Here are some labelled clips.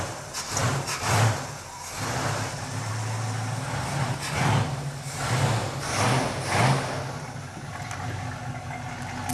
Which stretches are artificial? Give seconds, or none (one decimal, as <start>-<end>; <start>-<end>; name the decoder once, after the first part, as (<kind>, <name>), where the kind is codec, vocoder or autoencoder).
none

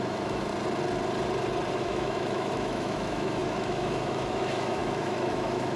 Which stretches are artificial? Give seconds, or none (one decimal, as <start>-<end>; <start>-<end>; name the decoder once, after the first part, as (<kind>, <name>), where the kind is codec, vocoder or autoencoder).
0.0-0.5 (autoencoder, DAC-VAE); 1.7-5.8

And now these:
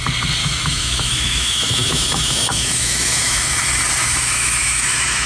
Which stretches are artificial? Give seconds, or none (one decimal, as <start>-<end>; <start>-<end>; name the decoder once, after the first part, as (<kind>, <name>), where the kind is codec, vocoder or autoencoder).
0.4-3.6 (autoencoder, DAC-VAE); 4.0-5.3

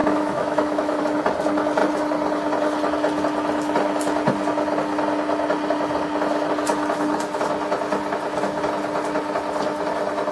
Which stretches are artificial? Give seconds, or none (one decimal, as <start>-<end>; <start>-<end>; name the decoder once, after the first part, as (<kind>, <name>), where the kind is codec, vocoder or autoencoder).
0.0-1.0 (autoencoder, DAC-VAE)

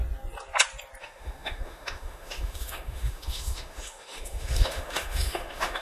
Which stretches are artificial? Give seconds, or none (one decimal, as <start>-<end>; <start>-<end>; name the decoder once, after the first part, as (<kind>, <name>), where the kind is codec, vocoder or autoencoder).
1.0-5.8 (autoencoder, DAC-VAE)

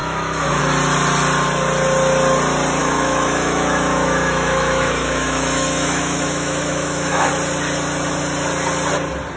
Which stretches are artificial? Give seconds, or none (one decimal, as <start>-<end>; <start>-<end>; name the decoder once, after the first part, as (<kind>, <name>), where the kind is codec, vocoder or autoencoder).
0.0-0.6 (autoencoder, DAC-VAE); 2.8-7.3

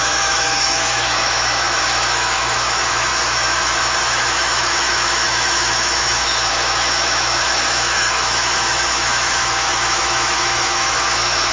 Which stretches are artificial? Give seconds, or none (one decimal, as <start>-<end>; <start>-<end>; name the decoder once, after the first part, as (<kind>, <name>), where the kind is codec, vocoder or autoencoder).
0.0-11.5 (autoencoder, DAC-VAE)

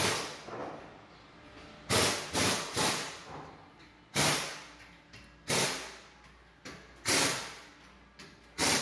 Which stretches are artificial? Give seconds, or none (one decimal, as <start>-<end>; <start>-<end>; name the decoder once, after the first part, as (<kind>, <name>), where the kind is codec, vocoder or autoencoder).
none